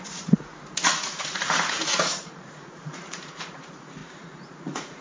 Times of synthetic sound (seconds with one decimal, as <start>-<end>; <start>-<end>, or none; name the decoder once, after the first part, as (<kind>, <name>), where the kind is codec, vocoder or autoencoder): 0.0-5.0 (vocoder, Vocos)